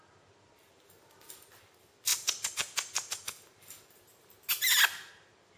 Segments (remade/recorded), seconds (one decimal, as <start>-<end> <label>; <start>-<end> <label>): 0.0-5.6 recorded